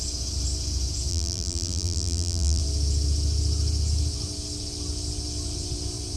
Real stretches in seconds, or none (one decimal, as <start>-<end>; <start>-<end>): 0.0-1.1; 2.6-6.2